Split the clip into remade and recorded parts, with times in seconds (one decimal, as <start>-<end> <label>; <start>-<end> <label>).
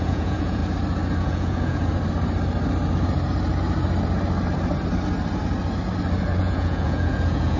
0.0-0.6 remade; 0.6-1.2 recorded; 1.2-1.8 remade; 1.8-6.4 recorded; 6.4-7.6 remade